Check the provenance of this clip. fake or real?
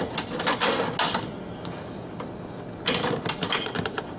real